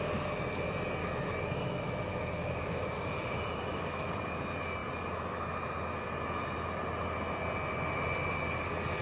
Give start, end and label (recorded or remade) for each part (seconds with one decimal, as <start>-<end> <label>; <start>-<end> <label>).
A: 0.0-1.0 recorded; 1.0-4.1 remade; 4.1-9.0 recorded